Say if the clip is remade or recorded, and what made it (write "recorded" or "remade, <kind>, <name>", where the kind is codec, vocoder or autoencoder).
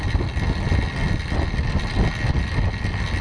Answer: recorded